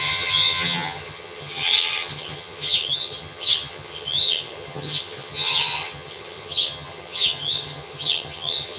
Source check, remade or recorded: remade